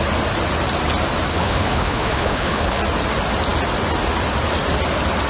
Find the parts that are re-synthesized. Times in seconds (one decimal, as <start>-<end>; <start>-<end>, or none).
1.3-2.8